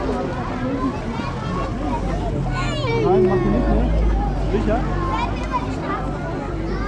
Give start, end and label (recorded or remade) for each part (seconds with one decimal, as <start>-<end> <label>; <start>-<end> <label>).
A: 0.0-6.9 recorded